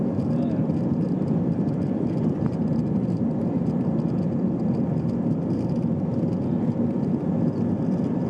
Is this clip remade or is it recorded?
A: remade